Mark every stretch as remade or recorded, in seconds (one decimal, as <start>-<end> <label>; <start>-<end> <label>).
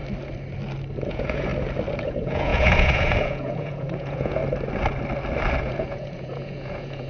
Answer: 0.0-1.1 recorded; 1.1-1.5 remade; 1.5-2.1 recorded; 2.1-4.4 remade; 4.4-5.6 recorded; 5.6-7.1 remade